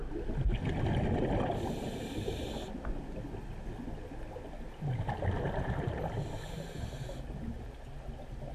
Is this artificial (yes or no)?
no